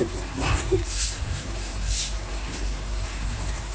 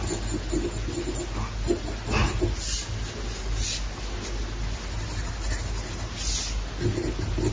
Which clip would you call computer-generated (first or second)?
first